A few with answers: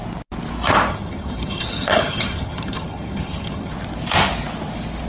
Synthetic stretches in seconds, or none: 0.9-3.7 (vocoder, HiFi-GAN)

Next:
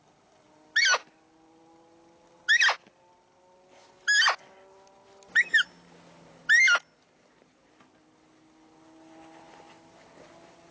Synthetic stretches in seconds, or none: none

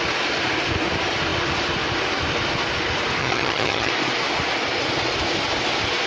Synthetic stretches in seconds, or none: 3.2-3.9 (vocoder, HiFi-GAN)

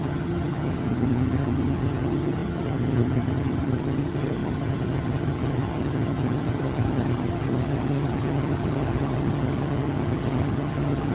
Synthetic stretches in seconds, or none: 0.0-11.1 (vocoder, HiFi-GAN)

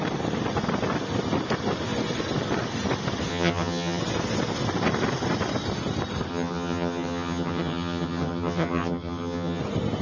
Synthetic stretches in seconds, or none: 3.3-4.0 (vocoder, HiFi-GAN); 6.3-9.6